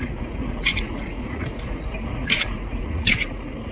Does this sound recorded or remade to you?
remade